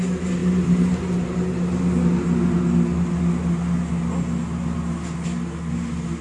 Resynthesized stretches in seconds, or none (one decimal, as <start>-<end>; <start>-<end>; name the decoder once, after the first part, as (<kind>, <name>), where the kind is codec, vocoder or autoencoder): none